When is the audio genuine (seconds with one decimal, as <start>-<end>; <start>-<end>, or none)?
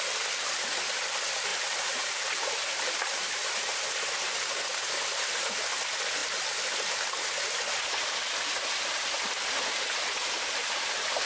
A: 0.0-1.5; 3.9-11.3